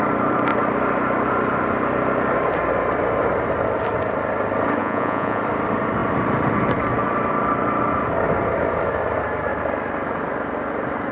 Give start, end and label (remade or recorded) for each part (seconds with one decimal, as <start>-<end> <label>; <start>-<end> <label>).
0.0-4.8 recorded; 4.8-5.4 remade; 5.4-11.1 recorded